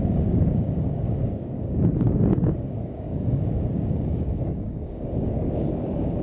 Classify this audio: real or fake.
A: fake